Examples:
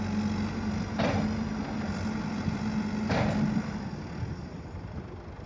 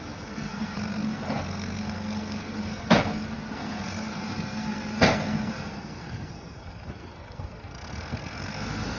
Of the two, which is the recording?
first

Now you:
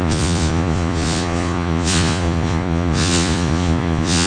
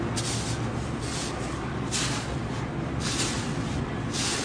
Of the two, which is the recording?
second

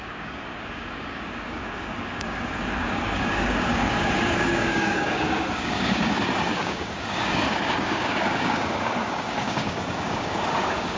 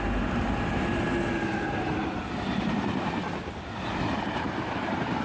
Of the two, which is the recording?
second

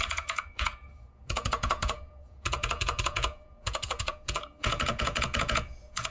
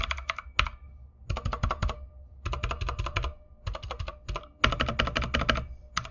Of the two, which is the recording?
second